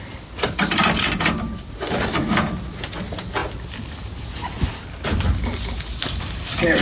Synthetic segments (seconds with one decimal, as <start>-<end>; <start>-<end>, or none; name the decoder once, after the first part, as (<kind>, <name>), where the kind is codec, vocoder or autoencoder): none